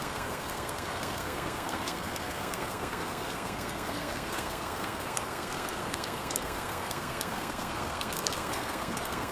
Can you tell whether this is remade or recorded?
remade